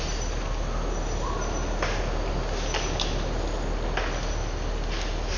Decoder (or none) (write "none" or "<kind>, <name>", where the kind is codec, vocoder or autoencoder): none